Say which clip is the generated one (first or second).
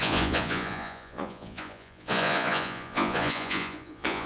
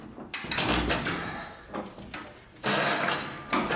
first